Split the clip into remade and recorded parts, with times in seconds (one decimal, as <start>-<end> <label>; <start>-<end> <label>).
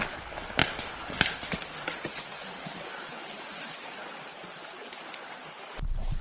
0.0-0.6 remade; 0.6-1.8 recorded; 1.8-2.3 remade; 2.3-3.4 recorded; 3.4-6.2 remade